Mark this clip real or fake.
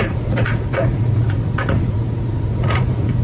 fake